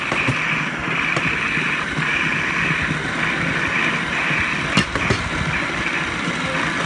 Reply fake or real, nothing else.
real